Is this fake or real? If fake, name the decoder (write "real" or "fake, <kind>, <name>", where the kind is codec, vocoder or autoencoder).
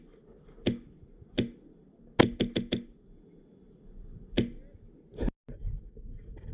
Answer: real